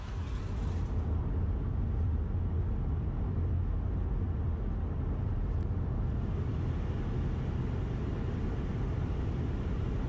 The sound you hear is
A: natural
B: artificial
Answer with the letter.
A